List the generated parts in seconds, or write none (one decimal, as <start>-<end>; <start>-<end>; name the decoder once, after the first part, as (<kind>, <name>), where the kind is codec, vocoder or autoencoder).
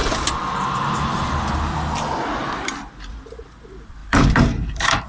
4.0-5.1 (vocoder, BigVGAN v2)